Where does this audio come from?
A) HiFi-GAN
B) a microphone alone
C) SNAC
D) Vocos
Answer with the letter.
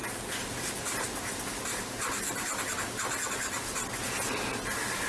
B